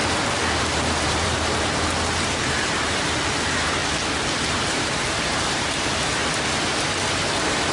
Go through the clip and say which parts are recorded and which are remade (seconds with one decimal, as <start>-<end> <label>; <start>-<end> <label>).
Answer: 0.0-0.6 recorded; 0.6-3.8 remade; 3.8-4.5 recorded; 4.5-6.2 remade; 6.2-7.1 recorded; 7.1-7.7 remade